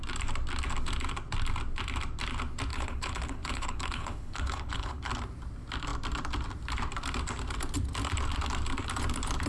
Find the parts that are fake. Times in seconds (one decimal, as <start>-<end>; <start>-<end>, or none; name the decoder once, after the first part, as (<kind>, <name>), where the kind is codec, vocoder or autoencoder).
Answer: 2.7-5.1 (codec, HILCodec)